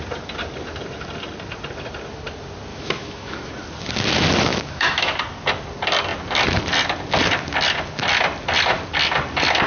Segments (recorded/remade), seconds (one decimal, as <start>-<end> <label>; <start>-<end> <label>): 0.0-2.7 recorded; 2.7-3.5 remade; 3.5-4.5 recorded; 4.5-5.2 remade; 5.2-9.7 recorded

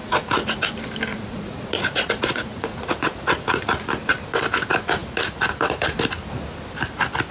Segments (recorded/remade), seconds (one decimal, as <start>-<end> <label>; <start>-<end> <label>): 0.0-0.6 remade; 0.6-1.1 recorded; 1.1-3.9 remade; 3.9-5.0 recorded; 5.0-6.0 remade; 6.0-7.3 recorded

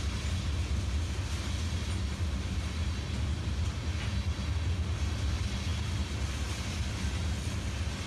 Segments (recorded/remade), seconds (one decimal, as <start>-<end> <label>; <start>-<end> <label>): 0.0-8.1 recorded

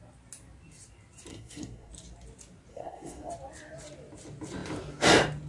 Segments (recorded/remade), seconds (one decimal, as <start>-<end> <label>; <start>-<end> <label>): 0.0-1.3 recorded; 1.3-1.9 remade; 1.9-2.7 recorded; 2.7-3.3 remade; 3.3-5.5 recorded

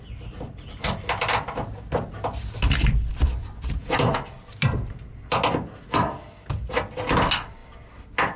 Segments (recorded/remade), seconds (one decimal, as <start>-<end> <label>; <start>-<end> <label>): 0.0-8.4 recorded

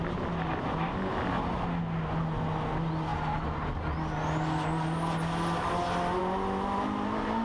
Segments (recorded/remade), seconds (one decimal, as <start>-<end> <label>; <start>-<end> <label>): 0.0-7.4 recorded

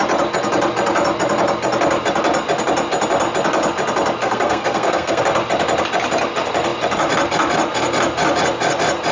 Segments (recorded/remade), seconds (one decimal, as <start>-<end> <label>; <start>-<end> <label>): 0.0-4.2 recorded; 4.2-5.2 remade; 5.2-9.1 recorded